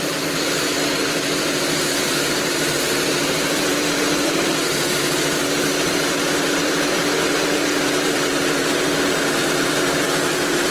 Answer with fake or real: fake